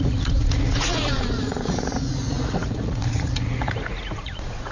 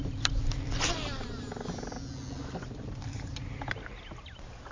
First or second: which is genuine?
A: second